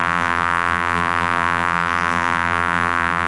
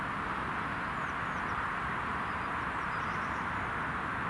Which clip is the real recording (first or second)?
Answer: second